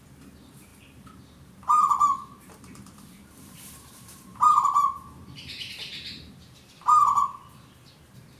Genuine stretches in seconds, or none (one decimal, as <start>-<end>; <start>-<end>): 0.0-0.7; 5.7-8.4